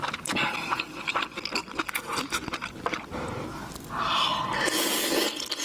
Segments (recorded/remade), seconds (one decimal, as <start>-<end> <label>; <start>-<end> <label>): 0.0-5.6 recorded